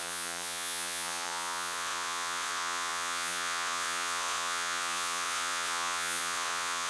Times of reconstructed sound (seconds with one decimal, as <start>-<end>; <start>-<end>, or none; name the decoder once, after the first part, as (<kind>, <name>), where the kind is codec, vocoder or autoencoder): 0.0-6.9 (vocoder, Vocos)

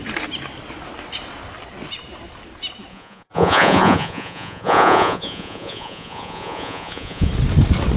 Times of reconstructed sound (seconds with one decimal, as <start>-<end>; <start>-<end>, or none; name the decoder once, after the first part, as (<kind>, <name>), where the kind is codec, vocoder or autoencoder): 2.9-7.3 (vocoder, Vocos)

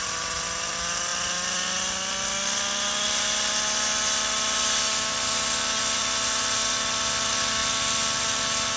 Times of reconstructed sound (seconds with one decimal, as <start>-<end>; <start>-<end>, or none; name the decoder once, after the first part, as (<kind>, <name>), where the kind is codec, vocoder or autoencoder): none

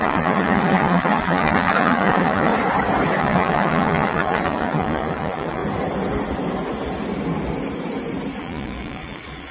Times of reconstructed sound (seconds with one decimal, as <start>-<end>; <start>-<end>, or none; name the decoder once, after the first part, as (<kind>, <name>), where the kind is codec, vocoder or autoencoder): 0.0-2.5 (vocoder, Vocos); 3.2-5.6; 8.4-9.5